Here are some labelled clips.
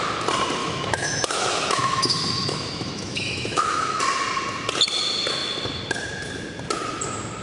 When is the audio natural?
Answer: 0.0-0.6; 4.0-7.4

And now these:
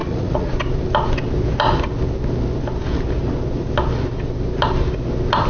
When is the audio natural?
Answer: 0.5-5.5

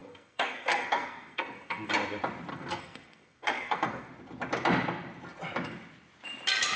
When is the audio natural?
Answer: 1.9-2.5; 4.1-6.8

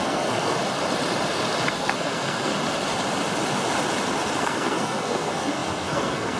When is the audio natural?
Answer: 0.6-1.7; 2.5-4.4

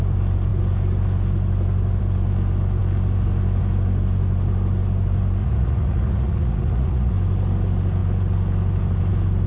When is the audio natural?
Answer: 0.0-5.4; 7.1-9.5

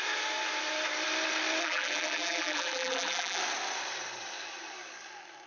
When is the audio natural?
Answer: 0.0-1.6; 3.4-5.5

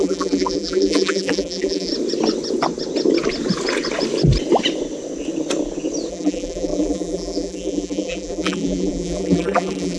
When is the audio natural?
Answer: 1.9-6.1